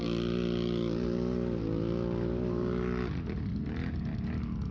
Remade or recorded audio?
recorded